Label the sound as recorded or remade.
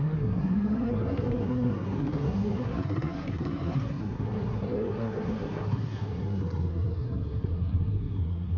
remade